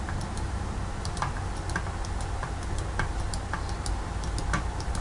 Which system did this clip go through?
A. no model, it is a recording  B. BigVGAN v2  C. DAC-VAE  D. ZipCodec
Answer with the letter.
A